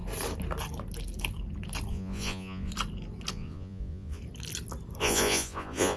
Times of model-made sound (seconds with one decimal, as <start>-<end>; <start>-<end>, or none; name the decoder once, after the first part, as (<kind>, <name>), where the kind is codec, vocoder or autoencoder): 1.9-2.7 (vocoder, Vocos); 3.3-4.2; 5.0-6.0